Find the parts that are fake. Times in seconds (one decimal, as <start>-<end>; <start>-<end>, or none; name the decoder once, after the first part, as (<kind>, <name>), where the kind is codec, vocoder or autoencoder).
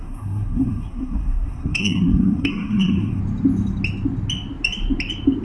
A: 0.0-3.2 (codec, SNAC)